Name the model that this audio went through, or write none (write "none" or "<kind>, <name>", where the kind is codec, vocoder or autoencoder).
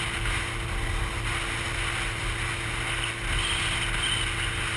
none